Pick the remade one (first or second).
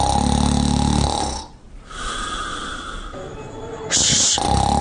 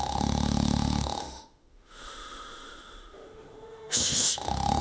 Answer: second